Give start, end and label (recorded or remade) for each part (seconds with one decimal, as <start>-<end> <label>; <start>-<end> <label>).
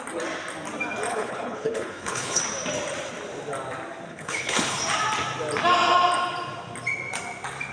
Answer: 0.0-1.1 recorded; 1.1-2.4 remade; 2.4-4.1 recorded; 4.1-4.8 remade; 4.8-7.7 recorded